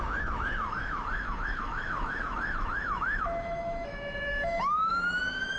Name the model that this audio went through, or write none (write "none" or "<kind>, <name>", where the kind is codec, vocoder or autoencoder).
autoencoder, DAC-VAE